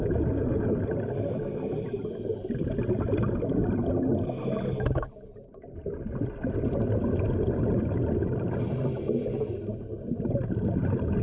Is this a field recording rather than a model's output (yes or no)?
yes